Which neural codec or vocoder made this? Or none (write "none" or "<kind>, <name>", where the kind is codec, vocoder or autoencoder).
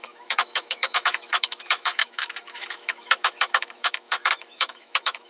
autoencoder, DAC-VAE